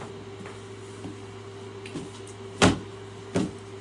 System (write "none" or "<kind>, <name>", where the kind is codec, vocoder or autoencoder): none